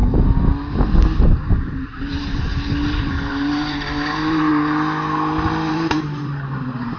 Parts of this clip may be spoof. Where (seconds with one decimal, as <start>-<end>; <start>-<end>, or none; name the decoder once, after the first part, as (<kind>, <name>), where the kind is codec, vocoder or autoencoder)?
1.5-2.5 (vocoder, BigVGAN v2); 3.0-4.5; 5.7-7.0